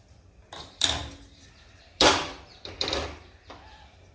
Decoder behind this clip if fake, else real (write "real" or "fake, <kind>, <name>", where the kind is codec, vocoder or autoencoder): fake, vocoder, BigVGAN v2